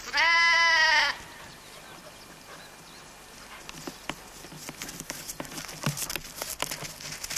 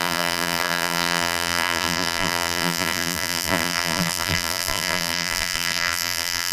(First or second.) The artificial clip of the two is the second